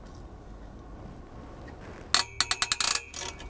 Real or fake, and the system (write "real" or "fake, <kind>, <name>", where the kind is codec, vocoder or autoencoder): real